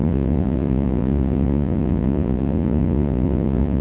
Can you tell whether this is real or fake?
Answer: fake